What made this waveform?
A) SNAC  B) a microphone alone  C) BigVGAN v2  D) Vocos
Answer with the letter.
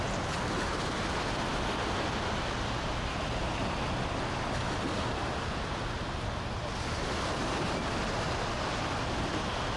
B